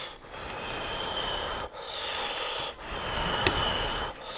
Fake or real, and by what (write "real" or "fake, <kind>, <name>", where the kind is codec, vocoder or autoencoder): real